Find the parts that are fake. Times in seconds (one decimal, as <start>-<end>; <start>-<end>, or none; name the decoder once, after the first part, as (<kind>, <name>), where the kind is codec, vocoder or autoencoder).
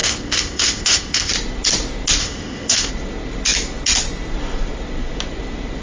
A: 0.0-1.3 (codec, ZipCodec); 2.2-2.9